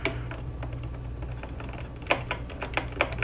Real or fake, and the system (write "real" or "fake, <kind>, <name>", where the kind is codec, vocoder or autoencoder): real